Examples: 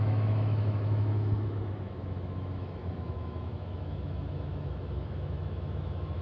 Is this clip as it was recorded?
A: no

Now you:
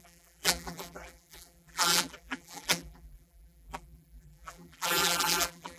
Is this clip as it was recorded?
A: no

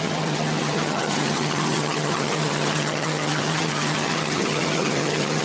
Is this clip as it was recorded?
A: no